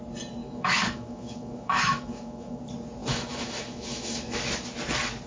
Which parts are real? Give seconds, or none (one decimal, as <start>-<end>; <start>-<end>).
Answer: 0.0-0.4; 2.6-3.0; 4.4-5.3

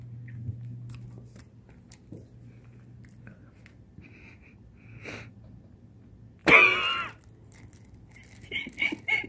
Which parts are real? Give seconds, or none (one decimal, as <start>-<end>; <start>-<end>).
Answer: 0.0-9.3

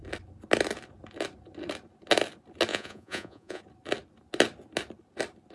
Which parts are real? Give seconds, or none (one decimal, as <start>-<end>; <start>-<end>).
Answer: 0.0-2.7; 3.6-5.5

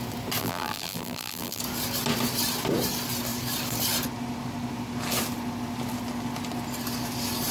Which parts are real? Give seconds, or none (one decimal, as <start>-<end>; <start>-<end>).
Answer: 0.0-0.4; 1.6-7.5

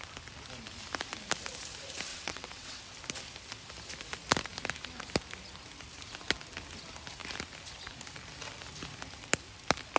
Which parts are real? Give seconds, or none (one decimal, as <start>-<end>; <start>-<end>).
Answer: 0.0-2.1; 2.8-10.0

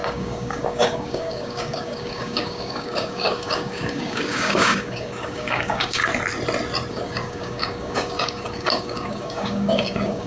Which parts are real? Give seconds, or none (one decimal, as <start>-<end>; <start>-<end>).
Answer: 6.0-6.9

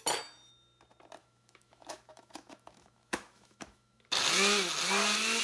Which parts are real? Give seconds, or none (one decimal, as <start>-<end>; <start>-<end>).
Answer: 0.0-1.2; 4.1-5.4